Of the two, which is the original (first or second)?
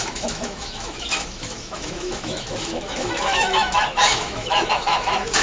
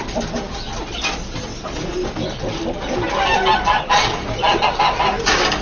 second